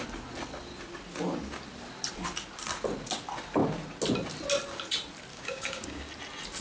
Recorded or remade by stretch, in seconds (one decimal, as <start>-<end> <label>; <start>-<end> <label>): 0.0-5.3 recorded; 5.3-6.1 remade; 6.1-6.6 recorded